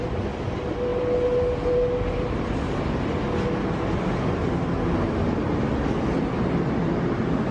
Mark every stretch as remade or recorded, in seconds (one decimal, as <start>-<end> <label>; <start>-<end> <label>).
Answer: 0.0-7.5 recorded